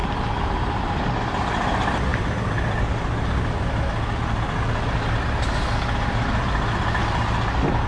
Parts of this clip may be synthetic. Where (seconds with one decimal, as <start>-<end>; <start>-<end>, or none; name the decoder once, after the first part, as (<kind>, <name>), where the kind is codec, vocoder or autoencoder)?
none